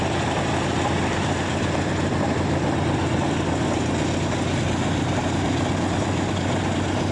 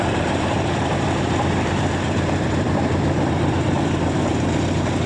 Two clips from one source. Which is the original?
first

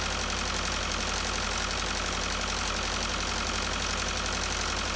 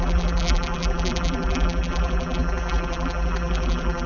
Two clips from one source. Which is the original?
first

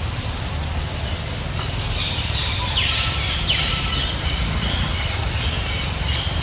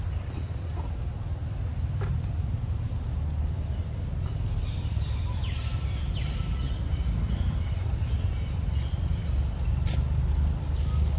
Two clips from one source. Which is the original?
second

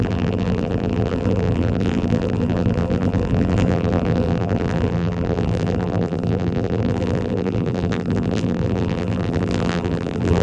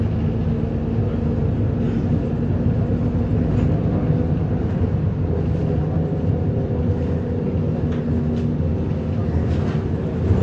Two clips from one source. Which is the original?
second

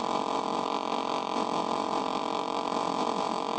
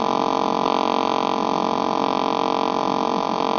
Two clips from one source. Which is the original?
second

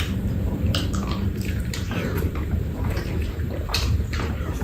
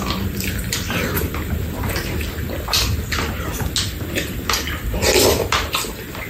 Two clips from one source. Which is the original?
second